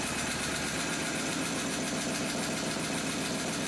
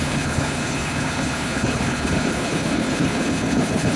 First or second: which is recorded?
first